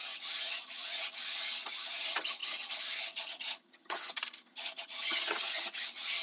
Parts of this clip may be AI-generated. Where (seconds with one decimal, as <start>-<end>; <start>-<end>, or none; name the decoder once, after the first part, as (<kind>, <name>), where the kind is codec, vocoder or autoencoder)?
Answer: 0.0-6.2 (vocoder, HiFi-GAN)